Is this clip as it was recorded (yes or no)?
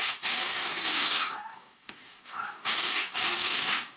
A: no